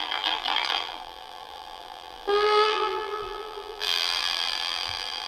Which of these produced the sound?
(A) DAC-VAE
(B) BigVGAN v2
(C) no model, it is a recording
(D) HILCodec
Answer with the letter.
B